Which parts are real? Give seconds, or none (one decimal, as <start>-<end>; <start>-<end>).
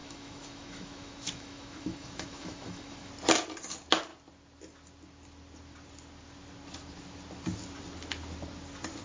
3.1-9.0